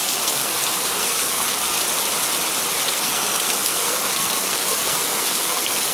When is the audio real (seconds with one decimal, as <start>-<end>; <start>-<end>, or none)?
1.8-2.9